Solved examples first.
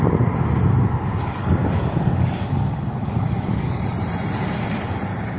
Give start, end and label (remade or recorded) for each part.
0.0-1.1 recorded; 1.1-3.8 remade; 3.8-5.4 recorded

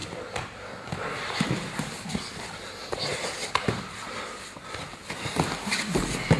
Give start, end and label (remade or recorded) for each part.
0.0-6.4 recorded